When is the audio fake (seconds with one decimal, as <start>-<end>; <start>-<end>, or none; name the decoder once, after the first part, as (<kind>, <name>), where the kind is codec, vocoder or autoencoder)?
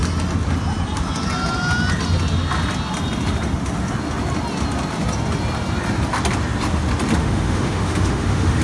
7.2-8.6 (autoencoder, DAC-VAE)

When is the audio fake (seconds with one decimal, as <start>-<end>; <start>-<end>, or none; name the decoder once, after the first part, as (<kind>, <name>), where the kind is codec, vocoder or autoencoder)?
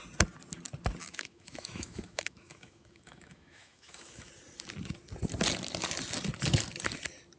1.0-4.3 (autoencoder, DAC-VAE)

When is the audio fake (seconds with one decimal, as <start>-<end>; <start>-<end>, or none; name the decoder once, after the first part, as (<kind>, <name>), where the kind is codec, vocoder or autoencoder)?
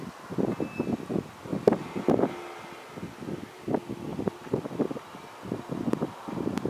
none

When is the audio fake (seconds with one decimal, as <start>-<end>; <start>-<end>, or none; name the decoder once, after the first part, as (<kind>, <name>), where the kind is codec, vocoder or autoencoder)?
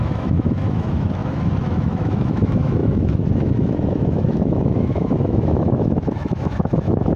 0.0-7.2 (autoencoder, DAC-VAE)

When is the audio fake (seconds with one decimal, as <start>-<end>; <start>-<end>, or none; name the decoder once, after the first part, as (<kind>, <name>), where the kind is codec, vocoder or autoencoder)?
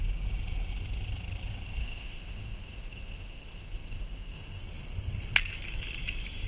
1.8-4.6 (autoencoder, DAC-VAE)